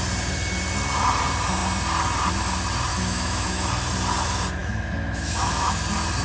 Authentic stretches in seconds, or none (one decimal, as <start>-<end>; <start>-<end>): 0.0-2.9; 3.7-4.6; 5.8-6.2